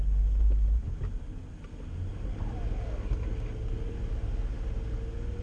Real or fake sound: real